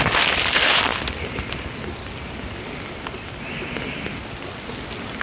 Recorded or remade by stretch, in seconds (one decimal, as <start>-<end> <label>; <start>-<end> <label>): 0.0-5.2 recorded